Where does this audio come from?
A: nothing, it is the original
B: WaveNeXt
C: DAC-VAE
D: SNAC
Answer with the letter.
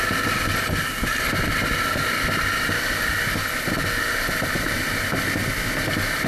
A